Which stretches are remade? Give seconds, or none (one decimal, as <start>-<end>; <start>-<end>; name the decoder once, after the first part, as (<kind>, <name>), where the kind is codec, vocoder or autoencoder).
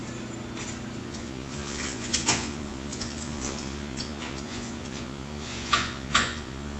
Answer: 1.0-6.8 (vocoder, Vocos)